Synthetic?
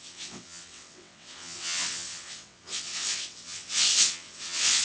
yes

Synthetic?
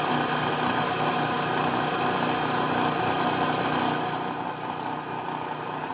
no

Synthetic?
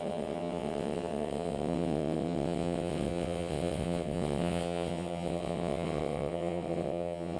yes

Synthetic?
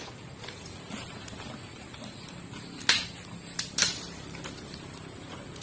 no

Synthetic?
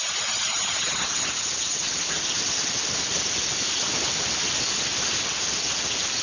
no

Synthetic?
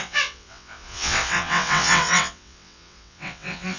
yes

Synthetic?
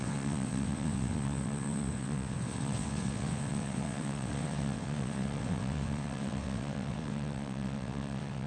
yes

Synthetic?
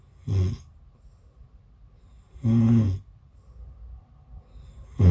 no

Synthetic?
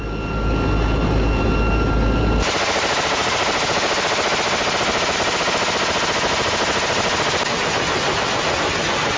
no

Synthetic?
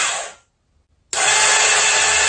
no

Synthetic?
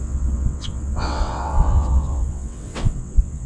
yes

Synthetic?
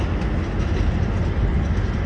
no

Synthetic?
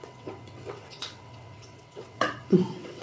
yes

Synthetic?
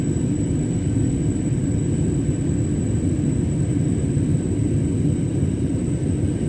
no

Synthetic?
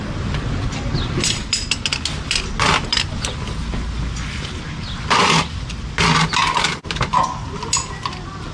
no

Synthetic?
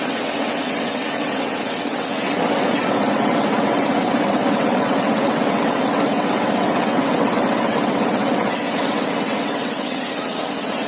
yes